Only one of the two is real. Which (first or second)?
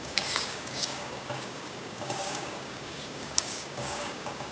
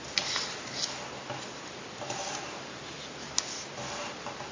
second